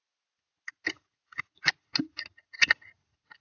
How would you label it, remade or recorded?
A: recorded